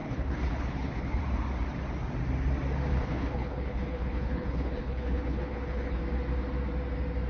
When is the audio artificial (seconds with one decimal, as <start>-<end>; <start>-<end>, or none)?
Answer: 0.0-1.2; 2.9-6.0